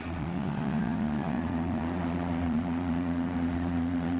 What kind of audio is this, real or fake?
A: fake